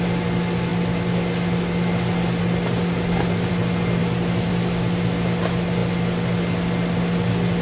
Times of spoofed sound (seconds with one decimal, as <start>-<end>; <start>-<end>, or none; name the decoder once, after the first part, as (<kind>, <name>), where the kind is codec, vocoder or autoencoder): none